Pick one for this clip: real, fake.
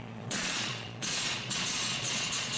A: fake